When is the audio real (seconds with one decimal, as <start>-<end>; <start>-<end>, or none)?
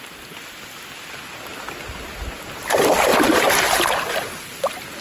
0.0-5.0